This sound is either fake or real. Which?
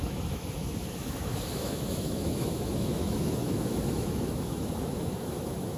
fake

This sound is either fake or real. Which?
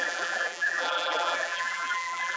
fake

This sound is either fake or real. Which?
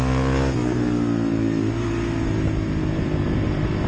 real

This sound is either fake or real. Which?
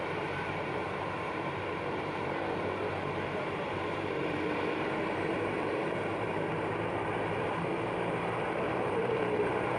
fake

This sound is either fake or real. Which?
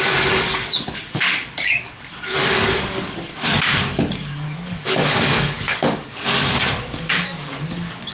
fake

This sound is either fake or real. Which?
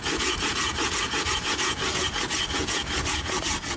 fake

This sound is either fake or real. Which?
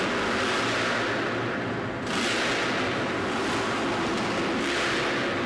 real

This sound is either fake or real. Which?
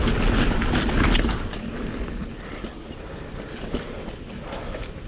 real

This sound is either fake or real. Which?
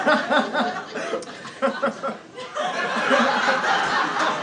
real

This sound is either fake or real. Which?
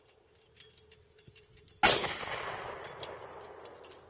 real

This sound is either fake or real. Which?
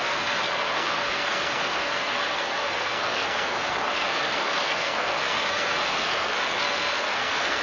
fake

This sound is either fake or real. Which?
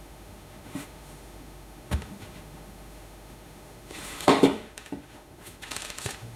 fake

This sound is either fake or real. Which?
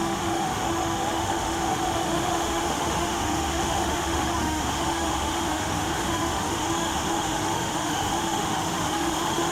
fake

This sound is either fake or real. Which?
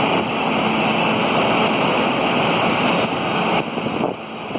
real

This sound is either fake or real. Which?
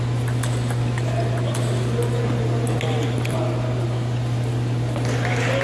real